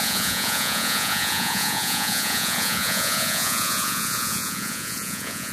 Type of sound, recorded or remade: remade